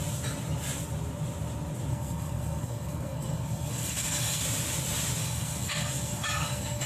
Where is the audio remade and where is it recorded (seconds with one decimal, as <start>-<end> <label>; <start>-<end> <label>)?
0.0-1.9 recorded; 1.9-4.4 remade; 4.4-5.2 recorded; 5.2-6.9 remade